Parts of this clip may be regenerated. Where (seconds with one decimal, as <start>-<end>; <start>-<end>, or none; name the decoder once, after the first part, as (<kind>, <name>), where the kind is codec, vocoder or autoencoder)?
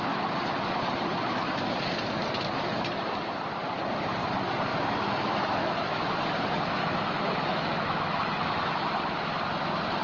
4.7-6.0 (autoencoder, DAC-VAE); 6.8-8.7